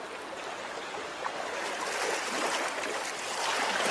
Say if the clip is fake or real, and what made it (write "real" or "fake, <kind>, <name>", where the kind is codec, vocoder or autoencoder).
real